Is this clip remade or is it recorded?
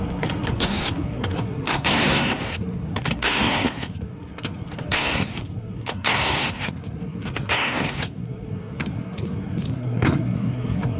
remade